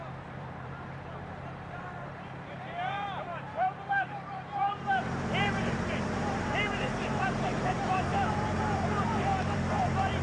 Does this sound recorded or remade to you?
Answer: remade